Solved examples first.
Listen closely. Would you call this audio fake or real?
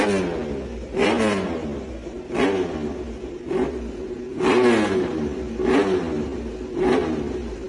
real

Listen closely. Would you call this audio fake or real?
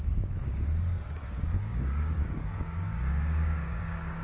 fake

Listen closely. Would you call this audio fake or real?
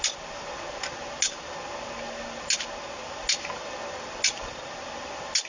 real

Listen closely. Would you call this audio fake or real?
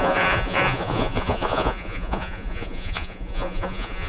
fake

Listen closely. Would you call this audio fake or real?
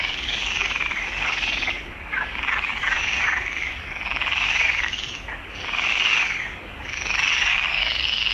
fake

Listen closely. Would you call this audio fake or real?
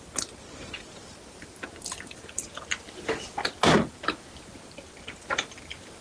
real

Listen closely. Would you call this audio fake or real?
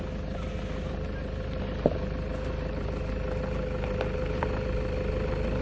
real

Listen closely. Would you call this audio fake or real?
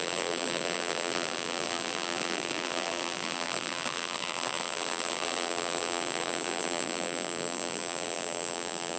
fake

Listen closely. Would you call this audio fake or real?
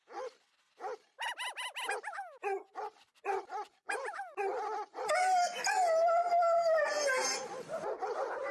real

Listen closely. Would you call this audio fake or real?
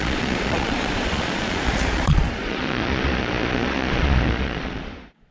fake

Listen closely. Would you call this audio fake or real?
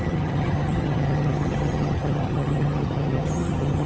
fake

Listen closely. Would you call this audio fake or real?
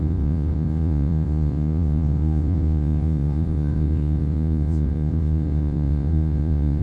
fake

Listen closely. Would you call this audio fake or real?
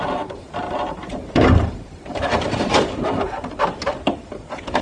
fake